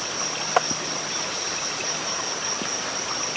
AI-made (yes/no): no